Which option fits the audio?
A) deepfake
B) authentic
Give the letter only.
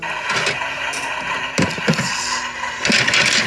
B